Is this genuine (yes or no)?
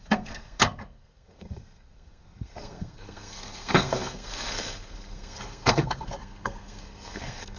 no